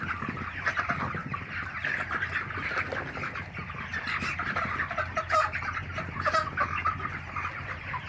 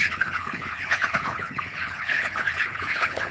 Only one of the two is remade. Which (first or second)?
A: second